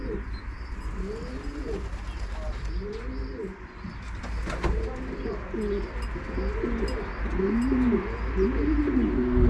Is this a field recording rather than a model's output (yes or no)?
yes